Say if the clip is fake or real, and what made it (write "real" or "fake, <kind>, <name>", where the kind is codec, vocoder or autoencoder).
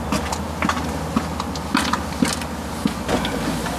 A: real